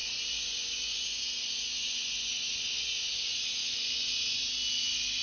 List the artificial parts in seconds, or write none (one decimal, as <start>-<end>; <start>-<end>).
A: 0.0-3.1; 3.6-4.4